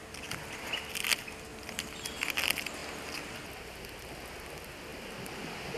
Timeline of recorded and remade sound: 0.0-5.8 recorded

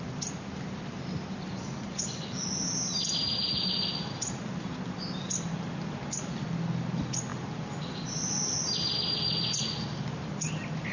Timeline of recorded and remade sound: 0.0-10.9 recorded

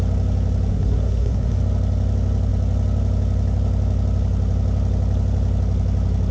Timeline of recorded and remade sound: 0.0-0.7 recorded; 0.7-1.6 remade; 1.6-6.3 recorded